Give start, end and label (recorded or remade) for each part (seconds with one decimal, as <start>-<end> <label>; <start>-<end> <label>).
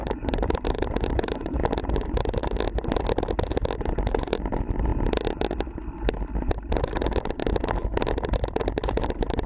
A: 0.0-1.6 remade; 1.6-3.5 recorded; 3.5-4.9 remade; 4.9-6.7 recorded; 6.7-7.4 remade; 7.4-8.9 recorded; 8.9-9.5 remade